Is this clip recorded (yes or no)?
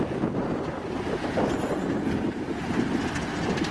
yes